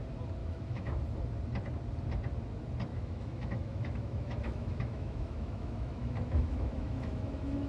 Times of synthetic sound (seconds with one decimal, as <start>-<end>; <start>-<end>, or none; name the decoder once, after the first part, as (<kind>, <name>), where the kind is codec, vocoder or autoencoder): 0.4-1.0 (autoencoder, DAC-VAE); 2.9-7.7